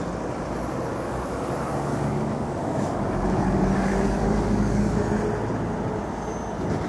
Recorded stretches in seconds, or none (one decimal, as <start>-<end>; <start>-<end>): 0.0-0.9; 5.0-6.9